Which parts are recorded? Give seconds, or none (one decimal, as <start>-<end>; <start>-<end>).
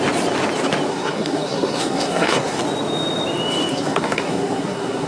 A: 0.0-0.9; 2.6-3.7